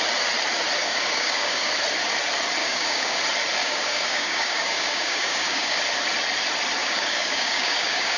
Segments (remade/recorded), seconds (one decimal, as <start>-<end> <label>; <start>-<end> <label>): 0.0-0.8 recorded; 0.8-1.7 remade; 1.7-2.6 recorded; 2.6-3.2 remade; 3.2-3.6 recorded; 3.6-5.8 remade; 5.8-6.8 recorded; 6.8-8.2 remade